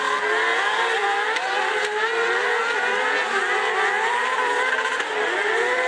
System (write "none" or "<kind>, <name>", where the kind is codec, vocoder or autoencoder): none